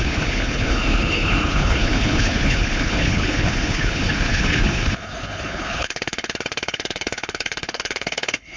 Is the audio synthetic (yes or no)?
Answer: yes